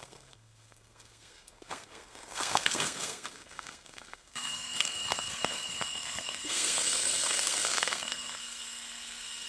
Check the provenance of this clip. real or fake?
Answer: fake